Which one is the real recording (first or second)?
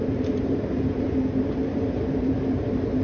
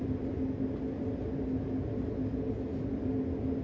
second